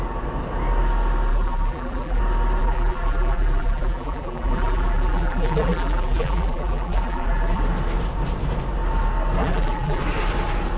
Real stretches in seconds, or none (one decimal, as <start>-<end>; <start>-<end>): 0.0-1.3; 2.2-2.6; 7.6-9.4; 10.0-10.8